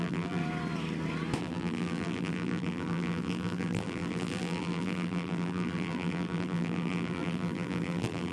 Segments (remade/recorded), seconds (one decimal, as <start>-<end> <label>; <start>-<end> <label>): 0.0-0.4 remade; 0.4-1.4 recorded; 1.4-8.3 remade

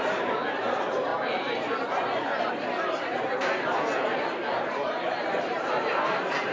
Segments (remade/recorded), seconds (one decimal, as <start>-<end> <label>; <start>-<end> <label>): 0.0-6.5 remade

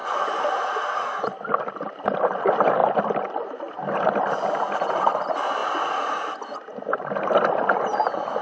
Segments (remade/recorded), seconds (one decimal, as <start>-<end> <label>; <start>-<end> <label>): 0.0-0.9 recorded; 0.9-2.8 remade; 2.8-5.0 recorded; 5.0-5.6 remade; 5.6-6.3 recorded; 6.3-6.7 remade; 6.7-7.4 recorded; 7.4-8.4 remade

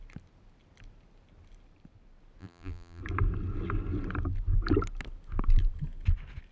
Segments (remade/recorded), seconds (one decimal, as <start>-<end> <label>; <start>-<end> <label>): 0.0-2.4 recorded; 2.4-3.0 remade; 3.0-6.5 recorded

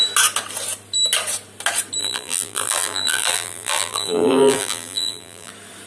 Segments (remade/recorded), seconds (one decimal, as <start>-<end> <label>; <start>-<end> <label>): 0.0-2.0 recorded; 2.0-5.5 remade; 5.5-5.9 recorded